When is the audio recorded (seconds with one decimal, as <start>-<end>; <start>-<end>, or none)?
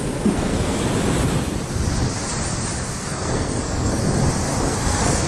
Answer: 0.8-3.0; 4.0-4.6